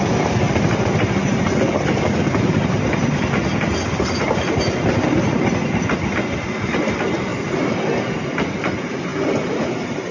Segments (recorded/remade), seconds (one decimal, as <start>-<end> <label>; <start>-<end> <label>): 0.0-10.1 recorded